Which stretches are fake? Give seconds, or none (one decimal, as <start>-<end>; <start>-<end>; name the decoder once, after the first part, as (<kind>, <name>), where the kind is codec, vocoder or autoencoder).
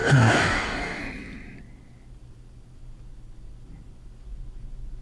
0.0-1.0 (codec, DAC)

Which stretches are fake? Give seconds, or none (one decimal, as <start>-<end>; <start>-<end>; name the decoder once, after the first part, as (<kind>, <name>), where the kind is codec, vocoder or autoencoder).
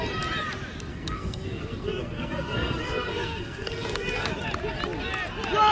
0.9-4.3 (codec, SNAC)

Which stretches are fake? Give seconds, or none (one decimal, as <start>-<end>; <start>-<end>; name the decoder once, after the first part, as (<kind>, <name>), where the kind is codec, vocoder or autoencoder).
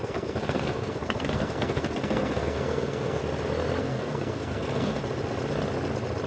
0.0-3.2 (codec, SNAC); 3.8-5.0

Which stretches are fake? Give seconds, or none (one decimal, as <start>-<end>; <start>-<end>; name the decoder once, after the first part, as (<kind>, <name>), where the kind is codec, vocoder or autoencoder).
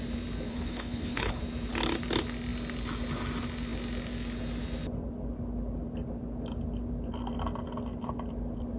0.5-1.4 (codec, HILCodec)